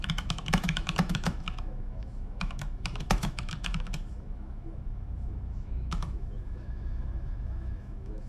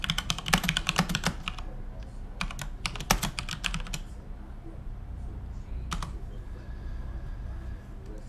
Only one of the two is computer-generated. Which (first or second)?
first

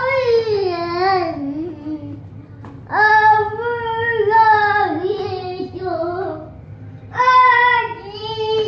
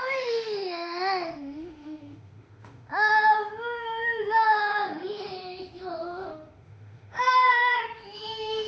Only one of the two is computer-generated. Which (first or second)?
second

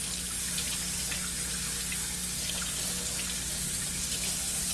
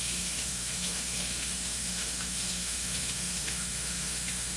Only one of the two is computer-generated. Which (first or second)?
second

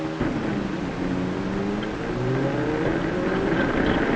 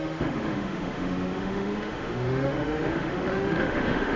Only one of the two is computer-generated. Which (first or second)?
second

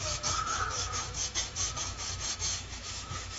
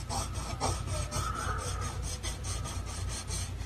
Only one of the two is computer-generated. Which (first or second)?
first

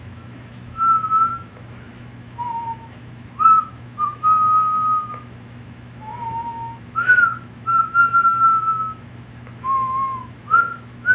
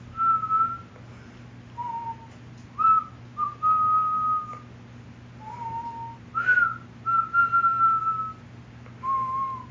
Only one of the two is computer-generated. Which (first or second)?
first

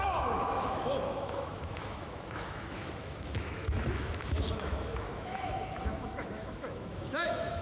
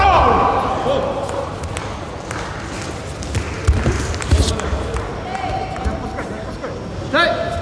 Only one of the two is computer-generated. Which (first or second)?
first